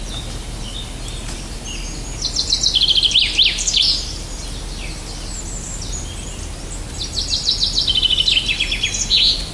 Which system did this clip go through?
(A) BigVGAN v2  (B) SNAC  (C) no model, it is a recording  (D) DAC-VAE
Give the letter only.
C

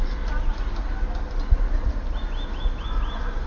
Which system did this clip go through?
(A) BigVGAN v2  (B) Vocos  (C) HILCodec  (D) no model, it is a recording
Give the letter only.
D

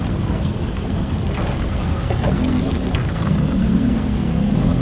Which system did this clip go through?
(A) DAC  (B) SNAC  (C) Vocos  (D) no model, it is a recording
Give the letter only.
B